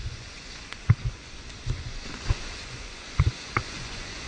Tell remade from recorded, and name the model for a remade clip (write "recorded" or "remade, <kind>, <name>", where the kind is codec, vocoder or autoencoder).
remade, vocoder, Vocos